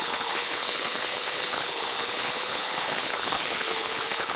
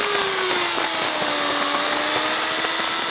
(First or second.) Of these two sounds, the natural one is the second